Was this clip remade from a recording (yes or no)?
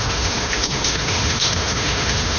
yes